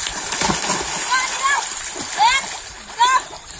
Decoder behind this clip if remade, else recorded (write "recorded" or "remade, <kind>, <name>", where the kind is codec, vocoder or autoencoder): recorded